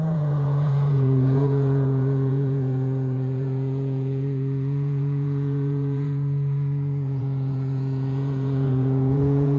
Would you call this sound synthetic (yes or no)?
yes